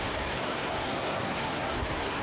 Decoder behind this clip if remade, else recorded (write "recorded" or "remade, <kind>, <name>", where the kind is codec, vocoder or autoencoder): remade, codec, SNAC